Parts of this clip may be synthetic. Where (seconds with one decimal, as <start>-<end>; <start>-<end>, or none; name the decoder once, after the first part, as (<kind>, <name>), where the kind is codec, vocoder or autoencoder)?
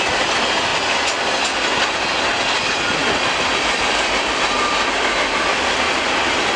none